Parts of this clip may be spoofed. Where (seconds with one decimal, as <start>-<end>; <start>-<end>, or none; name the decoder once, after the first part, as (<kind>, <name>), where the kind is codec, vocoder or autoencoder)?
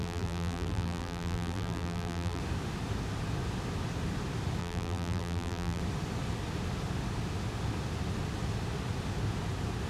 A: 0.0-2.4 (vocoder, BigVGAN v2); 4.6-5.8